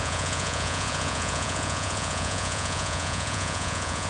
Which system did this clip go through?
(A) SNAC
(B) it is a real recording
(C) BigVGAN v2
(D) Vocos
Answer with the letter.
D